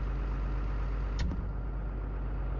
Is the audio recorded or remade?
recorded